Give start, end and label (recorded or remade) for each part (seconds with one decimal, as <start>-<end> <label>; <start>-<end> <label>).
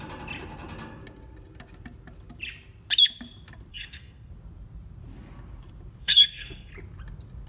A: 0.0-3.7 recorded; 3.7-4.3 remade; 4.3-6.0 recorded; 6.0-6.7 remade; 6.7-7.5 recorded